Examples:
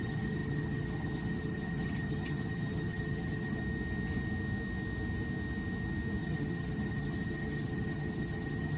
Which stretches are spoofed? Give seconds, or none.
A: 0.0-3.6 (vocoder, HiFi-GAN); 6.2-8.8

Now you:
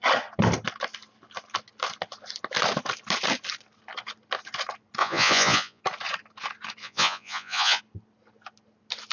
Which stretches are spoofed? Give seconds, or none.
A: 5.0-5.8 (vocoder, Vocos); 6.8-7.8

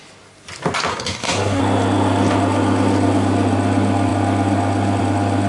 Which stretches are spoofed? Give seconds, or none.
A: 0.9-1.6 (codec, SNAC)

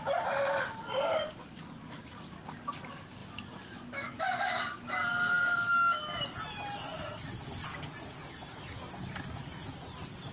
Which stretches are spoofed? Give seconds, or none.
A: none

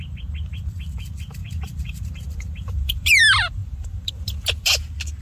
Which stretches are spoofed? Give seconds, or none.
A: 1.4-3.2 (vocoder, BigVGAN v2); 3.6-4.1

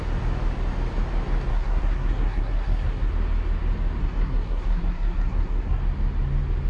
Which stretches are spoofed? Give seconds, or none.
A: 1.5-3.1 (codec, SNAC); 4.0-5.8

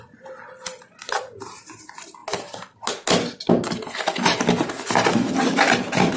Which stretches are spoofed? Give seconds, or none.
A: none

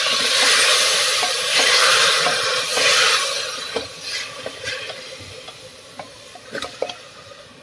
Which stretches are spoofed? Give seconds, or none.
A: 0.7-2.2 (vocoder, BigVGAN v2)